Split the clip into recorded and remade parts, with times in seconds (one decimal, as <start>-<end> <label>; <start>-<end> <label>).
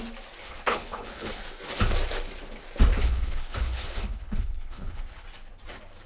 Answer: 0.0-0.4 recorded; 0.4-1.4 remade; 1.4-3.0 recorded; 3.0-5.0 remade; 5.0-6.1 recorded